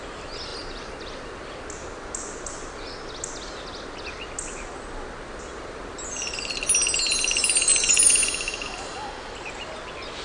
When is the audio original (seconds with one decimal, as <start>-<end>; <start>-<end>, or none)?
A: 0.0-7.7; 8.3-10.2